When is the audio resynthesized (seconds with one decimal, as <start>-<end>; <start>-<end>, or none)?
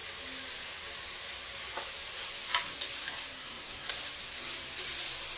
3.4-4.0